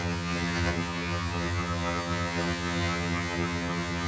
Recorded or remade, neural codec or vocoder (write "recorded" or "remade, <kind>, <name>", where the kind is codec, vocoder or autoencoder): remade, vocoder, HiFi-GAN